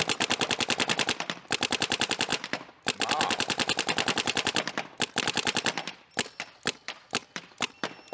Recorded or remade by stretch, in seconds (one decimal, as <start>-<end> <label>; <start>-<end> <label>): 0.0-8.1 remade